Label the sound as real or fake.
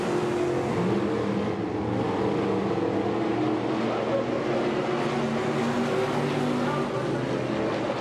real